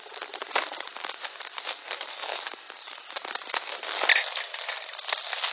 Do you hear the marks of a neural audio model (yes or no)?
yes